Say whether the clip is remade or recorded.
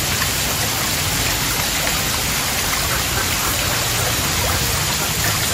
recorded